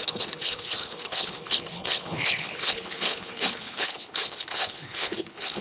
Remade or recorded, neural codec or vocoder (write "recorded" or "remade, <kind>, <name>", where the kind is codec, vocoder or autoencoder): remade, codec, HILCodec